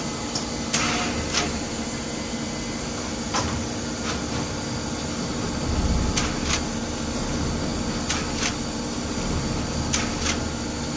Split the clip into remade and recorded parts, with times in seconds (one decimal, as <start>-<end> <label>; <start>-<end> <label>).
0.0-11.0 recorded